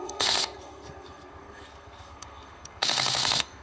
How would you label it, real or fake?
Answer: fake